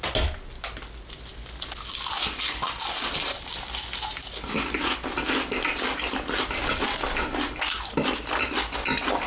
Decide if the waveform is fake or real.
real